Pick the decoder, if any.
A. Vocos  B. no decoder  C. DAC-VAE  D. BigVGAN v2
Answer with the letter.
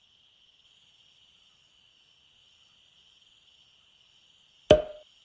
B